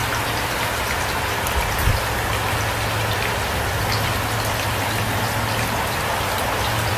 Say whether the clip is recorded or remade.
recorded